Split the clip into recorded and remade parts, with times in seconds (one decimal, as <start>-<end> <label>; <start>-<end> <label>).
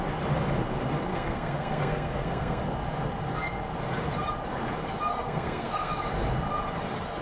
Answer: 0.0-1.1 recorded; 1.1-2.6 remade; 2.6-5.1 recorded; 5.1-5.9 remade; 5.9-7.2 recorded